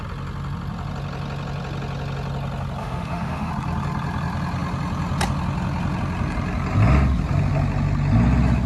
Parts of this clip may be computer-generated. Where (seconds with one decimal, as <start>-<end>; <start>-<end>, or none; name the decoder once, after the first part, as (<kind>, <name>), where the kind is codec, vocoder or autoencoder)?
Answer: 2.8-3.5 (autoencoder, DAC-VAE)